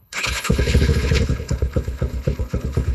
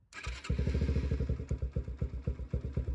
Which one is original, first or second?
second